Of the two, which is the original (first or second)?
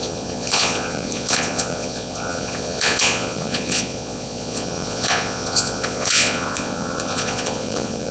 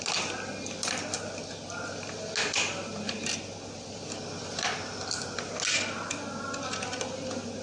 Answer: second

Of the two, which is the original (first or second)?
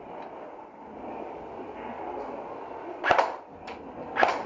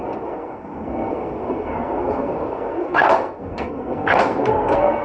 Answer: first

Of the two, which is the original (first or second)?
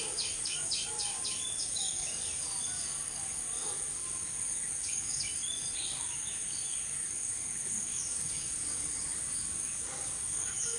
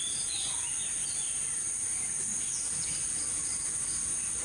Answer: second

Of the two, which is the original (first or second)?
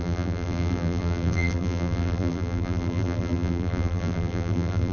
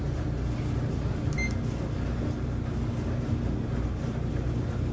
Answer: second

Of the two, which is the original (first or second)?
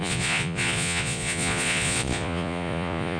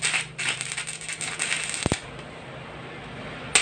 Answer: second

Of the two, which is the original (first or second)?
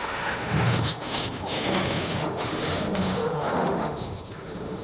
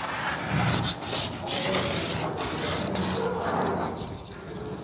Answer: second